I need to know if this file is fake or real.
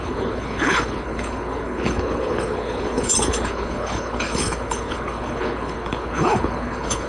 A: fake